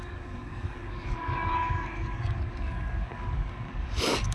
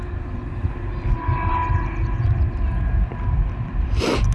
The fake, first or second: first